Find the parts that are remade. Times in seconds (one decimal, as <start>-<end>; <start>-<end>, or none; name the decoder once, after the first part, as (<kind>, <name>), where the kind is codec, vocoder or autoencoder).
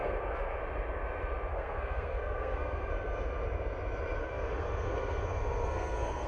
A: 0.0-0.6 (codec, SNAC); 1.5-2.9; 4.2-6.3